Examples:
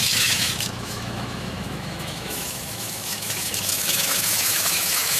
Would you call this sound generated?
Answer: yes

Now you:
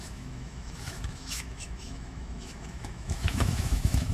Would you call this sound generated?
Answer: yes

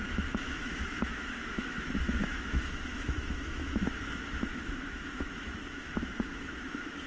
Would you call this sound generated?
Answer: yes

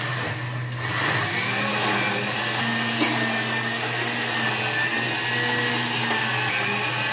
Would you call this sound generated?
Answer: no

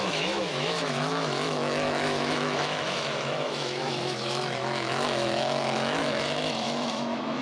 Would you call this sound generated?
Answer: yes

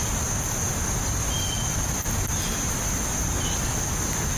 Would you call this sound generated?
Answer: no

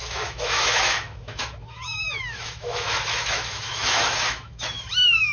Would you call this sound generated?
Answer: yes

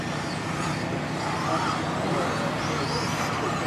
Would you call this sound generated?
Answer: no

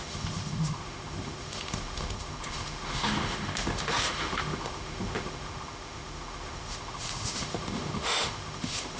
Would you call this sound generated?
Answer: yes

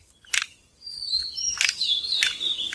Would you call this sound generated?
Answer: no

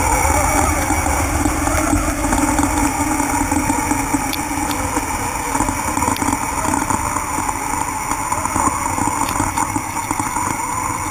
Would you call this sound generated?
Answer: no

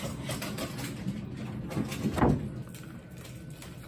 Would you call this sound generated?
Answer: no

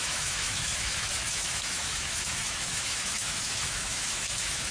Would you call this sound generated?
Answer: yes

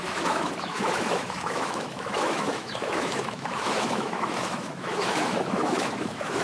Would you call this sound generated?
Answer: yes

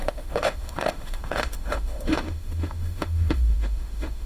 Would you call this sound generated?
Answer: yes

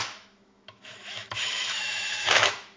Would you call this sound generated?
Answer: yes